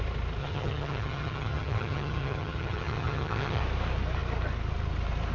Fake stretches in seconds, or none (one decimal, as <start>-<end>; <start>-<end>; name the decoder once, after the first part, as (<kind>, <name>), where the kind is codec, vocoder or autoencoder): 0.4-3.6 (vocoder, HiFi-GAN)